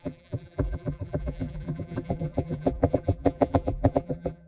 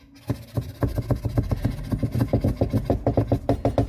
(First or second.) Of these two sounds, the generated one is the first